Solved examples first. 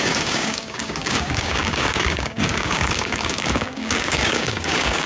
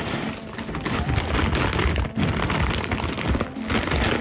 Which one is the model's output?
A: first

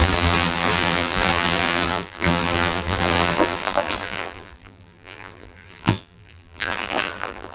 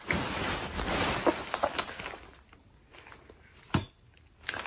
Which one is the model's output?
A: first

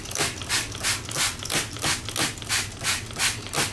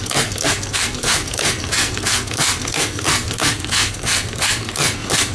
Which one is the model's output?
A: second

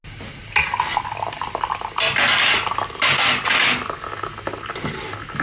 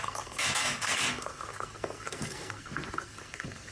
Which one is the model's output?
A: second